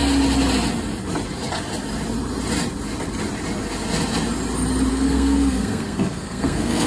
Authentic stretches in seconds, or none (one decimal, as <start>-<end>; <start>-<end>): 0.0-4.9